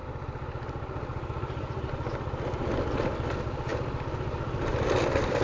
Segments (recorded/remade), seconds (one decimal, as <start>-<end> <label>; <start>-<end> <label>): 0.0-1.9 remade; 1.9-5.4 recorded